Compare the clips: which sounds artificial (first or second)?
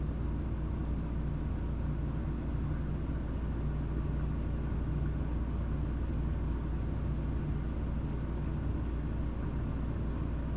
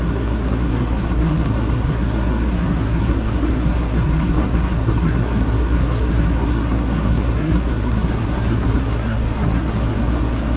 second